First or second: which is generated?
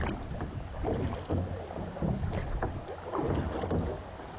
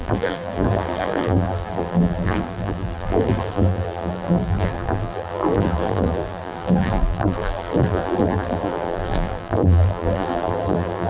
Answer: second